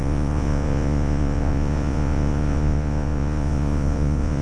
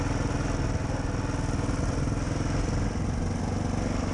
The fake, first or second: first